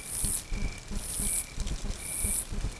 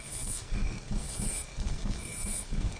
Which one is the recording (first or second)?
first